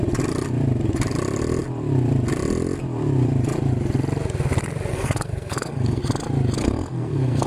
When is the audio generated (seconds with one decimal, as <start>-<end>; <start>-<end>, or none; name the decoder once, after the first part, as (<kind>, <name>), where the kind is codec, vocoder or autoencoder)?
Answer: 4.9-6.0 (codec, SNAC); 6.6-7.5

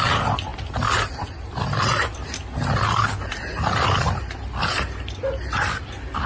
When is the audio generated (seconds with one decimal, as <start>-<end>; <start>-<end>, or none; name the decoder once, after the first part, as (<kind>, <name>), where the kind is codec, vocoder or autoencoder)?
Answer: none